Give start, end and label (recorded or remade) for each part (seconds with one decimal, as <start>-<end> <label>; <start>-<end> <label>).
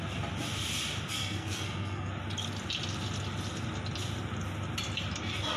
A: 0.0-1.1 recorded; 1.1-2.1 remade; 2.1-5.6 recorded